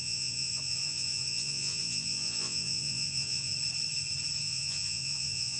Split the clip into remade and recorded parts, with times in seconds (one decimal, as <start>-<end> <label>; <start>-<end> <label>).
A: 0.0-3.5 remade; 3.5-4.4 recorded; 4.4-5.6 remade